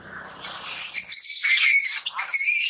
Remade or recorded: recorded